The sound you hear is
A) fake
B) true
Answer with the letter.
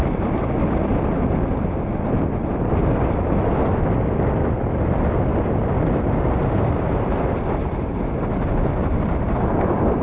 B